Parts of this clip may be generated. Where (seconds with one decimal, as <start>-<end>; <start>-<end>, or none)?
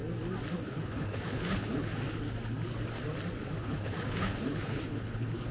0.5-1.9; 3.6-5.5